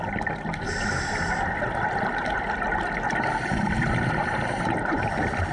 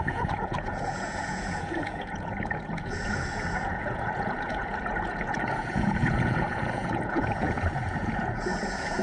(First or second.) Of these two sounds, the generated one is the second